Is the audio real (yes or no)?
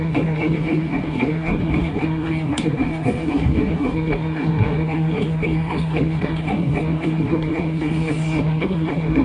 no